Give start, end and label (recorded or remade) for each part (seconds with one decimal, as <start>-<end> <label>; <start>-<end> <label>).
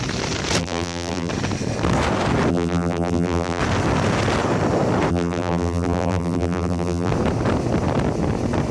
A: 0.0-0.6 recorded; 0.6-1.3 remade; 1.3-2.5 recorded; 2.5-3.6 remade; 3.6-5.1 recorded; 5.1-7.1 remade; 7.1-8.7 recorded